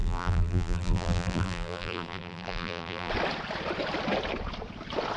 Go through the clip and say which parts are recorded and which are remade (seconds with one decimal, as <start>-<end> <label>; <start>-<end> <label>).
0.0-3.1 remade; 3.1-5.2 recorded